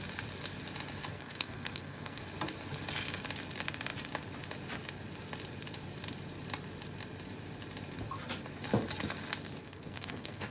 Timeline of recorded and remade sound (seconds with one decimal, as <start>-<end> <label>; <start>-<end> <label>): 0.0-1.1 recorded; 1.1-2.2 remade; 2.2-9.6 recorded; 9.6-10.5 remade